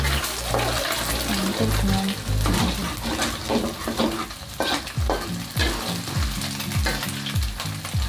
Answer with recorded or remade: recorded